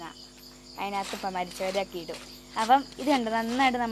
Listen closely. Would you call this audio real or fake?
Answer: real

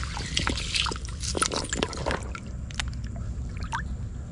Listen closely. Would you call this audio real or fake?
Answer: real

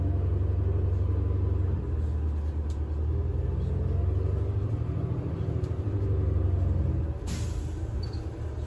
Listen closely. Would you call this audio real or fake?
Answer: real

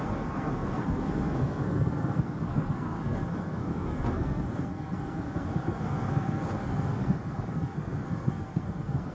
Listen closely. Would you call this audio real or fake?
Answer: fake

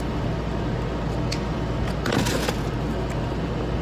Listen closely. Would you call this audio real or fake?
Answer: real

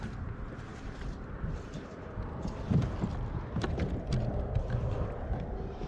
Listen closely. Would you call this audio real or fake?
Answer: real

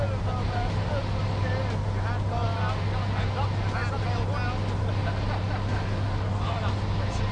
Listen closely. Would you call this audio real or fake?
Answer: real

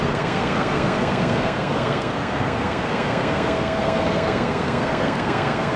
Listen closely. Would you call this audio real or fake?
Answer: fake